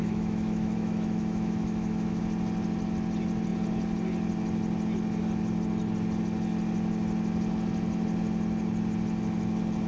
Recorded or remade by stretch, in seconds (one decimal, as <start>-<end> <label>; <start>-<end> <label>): 0.0-2.2 remade; 2.2-9.9 recorded